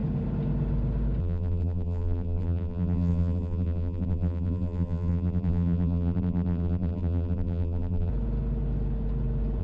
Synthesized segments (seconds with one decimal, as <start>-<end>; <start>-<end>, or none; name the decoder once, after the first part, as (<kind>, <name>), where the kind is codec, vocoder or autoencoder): 1.2-8.1 (vocoder, BigVGAN v2)